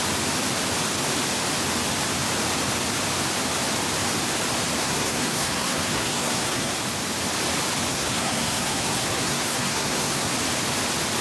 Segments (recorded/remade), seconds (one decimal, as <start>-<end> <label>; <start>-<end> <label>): 0.0-4.8 recorded; 4.8-6.7 remade; 6.7-7.9 recorded; 7.9-10.3 remade; 10.3-11.2 recorded